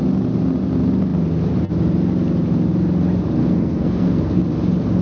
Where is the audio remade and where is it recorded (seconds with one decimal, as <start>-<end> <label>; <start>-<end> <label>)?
0.0-3.4 recorded; 3.4-4.4 remade; 4.4-5.0 recorded